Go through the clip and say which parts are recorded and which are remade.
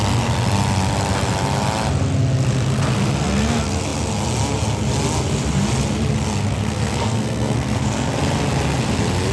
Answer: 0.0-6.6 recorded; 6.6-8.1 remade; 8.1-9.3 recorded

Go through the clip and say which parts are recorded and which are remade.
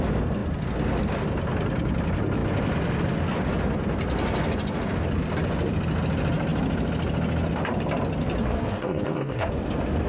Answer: 0.0-8.4 recorded; 8.4-9.5 remade; 9.5-10.1 recorded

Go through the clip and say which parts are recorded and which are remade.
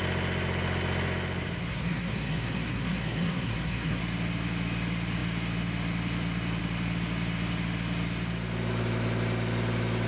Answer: 0.0-1.7 recorded; 1.7-4.0 remade; 4.0-10.1 recorded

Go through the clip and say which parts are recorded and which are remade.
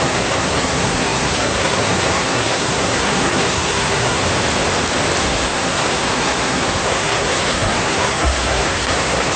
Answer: 0.0-4.2 remade; 4.2-5.2 recorded; 5.2-9.4 remade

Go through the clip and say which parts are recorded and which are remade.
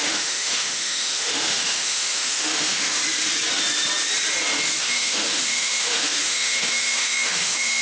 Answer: 0.0-3.0 remade; 3.0-4.8 recorded; 4.8-7.8 remade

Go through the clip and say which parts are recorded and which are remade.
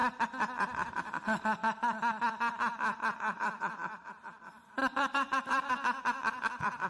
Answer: 0.0-4.8 recorded; 4.8-5.7 remade; 5.7-6.9 recorded